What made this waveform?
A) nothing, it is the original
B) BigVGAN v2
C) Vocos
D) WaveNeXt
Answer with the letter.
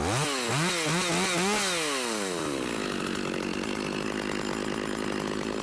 A